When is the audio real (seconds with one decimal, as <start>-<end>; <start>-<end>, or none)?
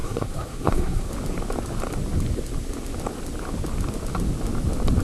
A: 1.1-5.0